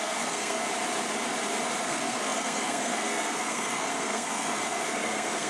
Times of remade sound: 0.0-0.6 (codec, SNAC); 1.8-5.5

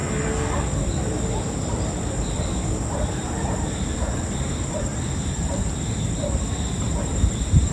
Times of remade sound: 0.6-4.9 (vocoder, BigVGAN v2); 5.4-7.7

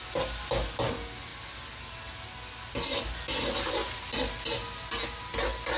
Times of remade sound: 1.3-1.8 (vocoder, BigVGAN v2)

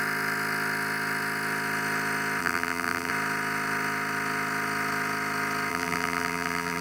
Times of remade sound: 2.4-3.1 (vocoder, BigVGAN v2); 5.7-6.8

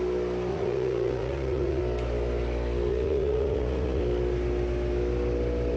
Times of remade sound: 0.5-1.8 (vocoder, Vocos); 2.9-4.0

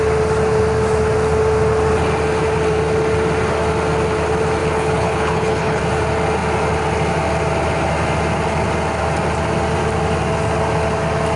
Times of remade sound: 4.6-5.8 (codec, HILCodec)